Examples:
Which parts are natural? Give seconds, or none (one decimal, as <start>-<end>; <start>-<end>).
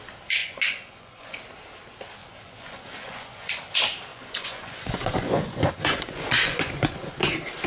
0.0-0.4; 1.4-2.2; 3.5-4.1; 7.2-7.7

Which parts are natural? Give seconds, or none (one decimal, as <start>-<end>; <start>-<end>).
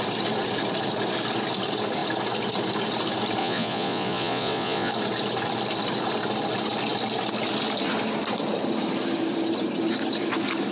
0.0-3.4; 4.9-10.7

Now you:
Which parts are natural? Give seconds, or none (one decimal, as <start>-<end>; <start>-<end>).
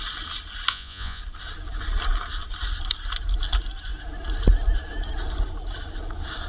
0.0-0.7; 1.2-6.5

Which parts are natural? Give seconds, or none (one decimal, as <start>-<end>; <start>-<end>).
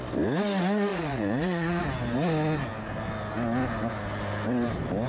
0.0-0.9; 1.8-5.1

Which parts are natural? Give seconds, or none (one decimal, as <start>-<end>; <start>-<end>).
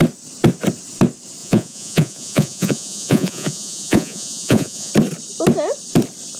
0.0-1.4; 4.9-6.4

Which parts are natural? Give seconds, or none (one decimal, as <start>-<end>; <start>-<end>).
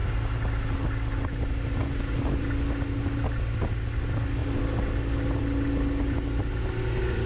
0.0-7.3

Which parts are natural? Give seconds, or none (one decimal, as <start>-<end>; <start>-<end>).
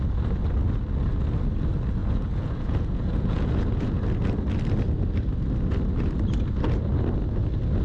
0.0-2.0; 4.0-7.8